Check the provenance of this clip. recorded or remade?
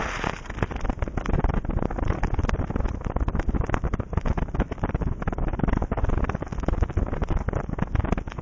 recorded